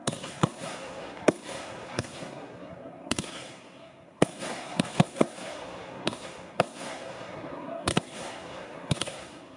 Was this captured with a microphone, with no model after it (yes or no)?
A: no